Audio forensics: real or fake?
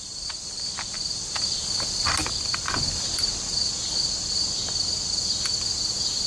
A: real